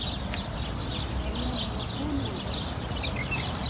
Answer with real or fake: real